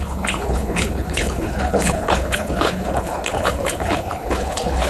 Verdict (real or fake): fake